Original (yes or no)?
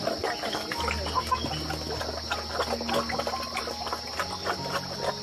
yes